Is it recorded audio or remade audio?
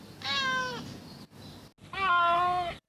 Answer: recorded